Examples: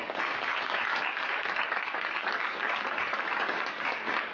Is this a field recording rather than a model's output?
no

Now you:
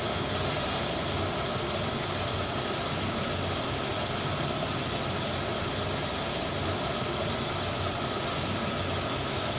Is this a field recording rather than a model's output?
yes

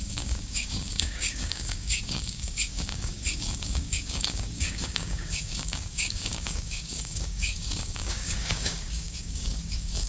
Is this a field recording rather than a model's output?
no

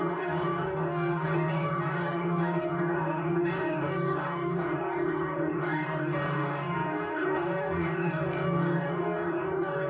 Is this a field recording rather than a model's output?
no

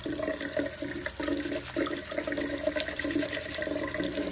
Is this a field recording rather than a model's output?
yes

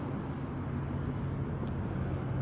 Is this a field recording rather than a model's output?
yes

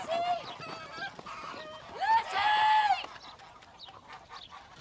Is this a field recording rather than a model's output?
yes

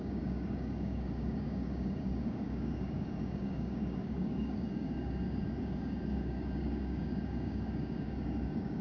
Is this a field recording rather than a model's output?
no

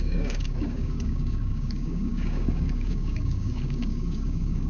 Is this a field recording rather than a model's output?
no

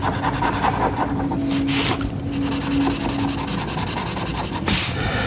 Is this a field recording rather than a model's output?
yes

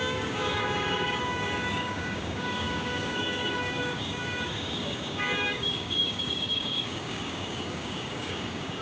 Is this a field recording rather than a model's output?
no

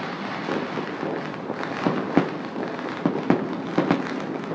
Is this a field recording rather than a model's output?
yes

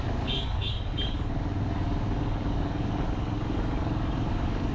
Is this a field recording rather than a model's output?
no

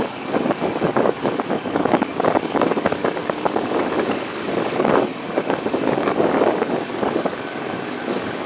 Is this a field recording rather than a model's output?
no